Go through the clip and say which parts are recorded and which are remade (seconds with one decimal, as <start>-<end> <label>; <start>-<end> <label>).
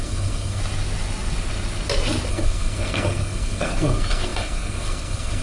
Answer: 0.0-0.6 remade; 0.6-2.3 recorded; 2.3-5.4 remade